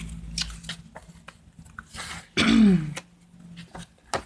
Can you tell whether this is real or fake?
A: real